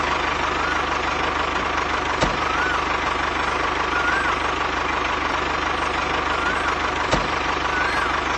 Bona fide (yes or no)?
yes